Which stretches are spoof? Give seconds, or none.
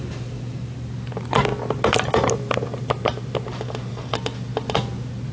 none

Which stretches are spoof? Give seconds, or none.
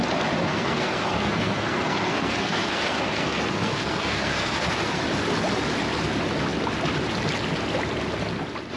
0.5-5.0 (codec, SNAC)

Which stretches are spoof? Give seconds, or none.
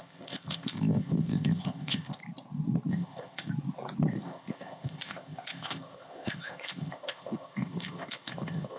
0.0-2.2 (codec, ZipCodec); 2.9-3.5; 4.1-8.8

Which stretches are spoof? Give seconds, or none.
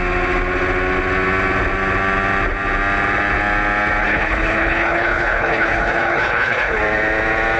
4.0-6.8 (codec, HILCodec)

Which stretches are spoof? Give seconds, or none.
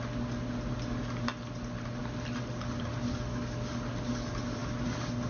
none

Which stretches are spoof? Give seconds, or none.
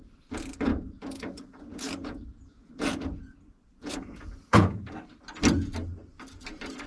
0.7-4.8 (vocoder, Vocos)